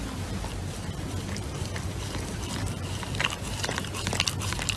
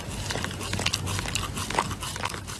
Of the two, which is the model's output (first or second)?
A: first